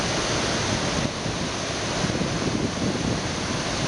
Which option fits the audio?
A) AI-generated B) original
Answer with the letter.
B